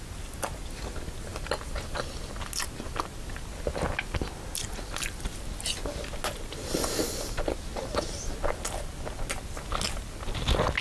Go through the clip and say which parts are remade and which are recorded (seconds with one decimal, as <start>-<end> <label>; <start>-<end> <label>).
0.0-10.8 recorded